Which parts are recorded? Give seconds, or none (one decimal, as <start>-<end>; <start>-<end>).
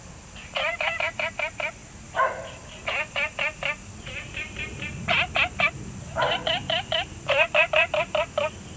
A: 0.0-8.8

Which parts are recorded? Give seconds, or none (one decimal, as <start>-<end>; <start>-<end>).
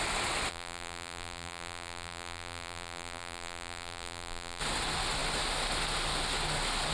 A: 0.0-0.5; 4.6-6.9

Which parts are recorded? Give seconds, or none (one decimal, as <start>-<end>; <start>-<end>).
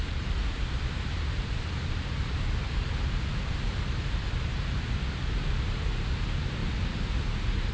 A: 5.0-5.8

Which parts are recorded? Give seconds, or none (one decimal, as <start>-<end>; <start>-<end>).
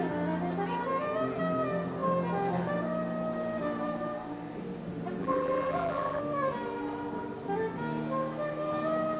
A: 0.0-5.2; 6.2-9.2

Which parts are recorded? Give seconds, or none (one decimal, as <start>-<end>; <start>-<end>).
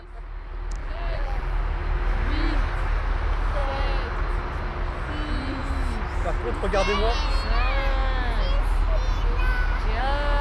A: 0.0-0.8; 1.5-10.4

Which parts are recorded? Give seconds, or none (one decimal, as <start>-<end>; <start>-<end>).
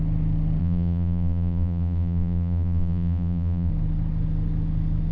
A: 0.0-0.6; 3.7-5.1